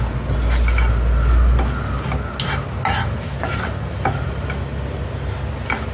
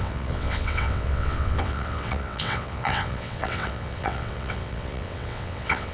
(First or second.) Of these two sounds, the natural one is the first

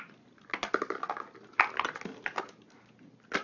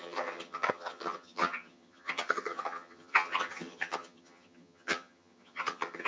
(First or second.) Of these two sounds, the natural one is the first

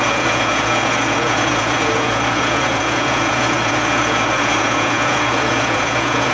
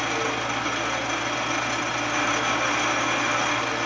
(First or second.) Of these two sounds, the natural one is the second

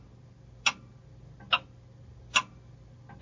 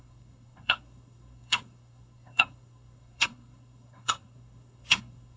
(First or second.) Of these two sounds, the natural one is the first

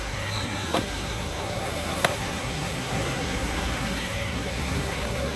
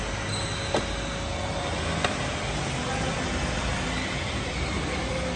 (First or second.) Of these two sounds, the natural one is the second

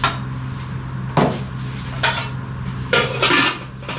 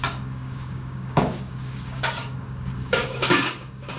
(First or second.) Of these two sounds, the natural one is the first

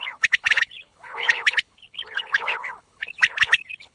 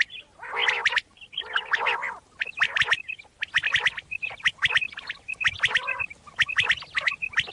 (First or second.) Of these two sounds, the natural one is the second